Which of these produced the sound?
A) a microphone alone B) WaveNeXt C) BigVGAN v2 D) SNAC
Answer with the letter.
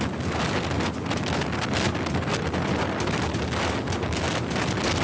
A